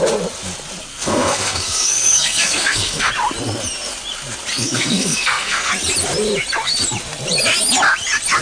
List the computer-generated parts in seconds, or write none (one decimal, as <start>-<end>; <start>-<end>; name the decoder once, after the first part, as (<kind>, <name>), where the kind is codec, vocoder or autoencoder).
0.9-3.1 (codec, SNAC); 4.5-5.7